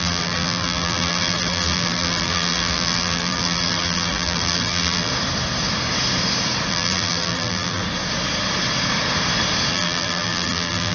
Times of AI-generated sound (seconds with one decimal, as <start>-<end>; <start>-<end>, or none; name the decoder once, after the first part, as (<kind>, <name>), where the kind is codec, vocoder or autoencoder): 0.0-5.1 (vocoder, BigVGAN v2); 6.7-7.8; 9.7-10.9